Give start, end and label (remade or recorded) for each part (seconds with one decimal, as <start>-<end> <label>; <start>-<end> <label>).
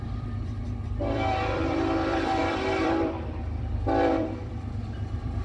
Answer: 0.0-5.4 remade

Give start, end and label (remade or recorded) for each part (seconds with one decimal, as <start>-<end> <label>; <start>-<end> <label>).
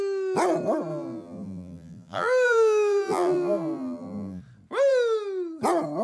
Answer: 0.0-0.9 recorded; 0.9-4.4 remade; 4.4-6.0 recorded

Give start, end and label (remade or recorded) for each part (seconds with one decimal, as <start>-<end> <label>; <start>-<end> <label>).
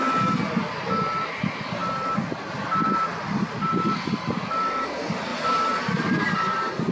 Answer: 0.0-1.8 recorded; 1.8-3.7 remade; 3.7-5.3 recorded; 5.3-6.9 remade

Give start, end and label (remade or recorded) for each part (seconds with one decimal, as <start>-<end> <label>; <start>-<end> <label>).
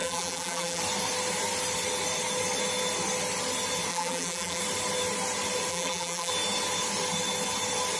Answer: 0.0-0.8 remade; 0.8-3.9 recorded; 3.9-4.6 remade; 4.6-5.7 recorded; 5.7-6.3 remade; 6.3-8.0 recorded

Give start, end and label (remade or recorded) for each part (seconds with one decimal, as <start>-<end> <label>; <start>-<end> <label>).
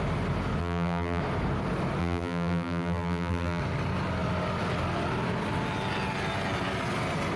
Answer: 0.0-0.6 recorded; 0.6-1.2 remade; 1.2-2.0 recorded; 2.0-3.6 remade; 3.6-7.4 recorded